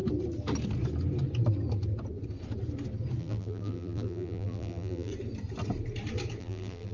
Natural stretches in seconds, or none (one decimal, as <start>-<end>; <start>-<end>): 0.0-3.2; 5.1-6.4